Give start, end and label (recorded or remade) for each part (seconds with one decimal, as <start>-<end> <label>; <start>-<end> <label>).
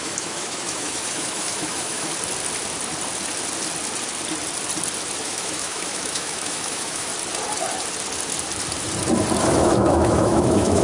0.0-2.1 remade; 2.1-5.2 recorded; 5.2-7.1 remade; 7.1-9.4 recorded; 9.4-10.8 remade